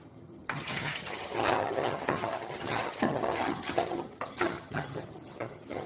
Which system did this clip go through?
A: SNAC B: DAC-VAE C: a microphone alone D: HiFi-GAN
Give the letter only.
D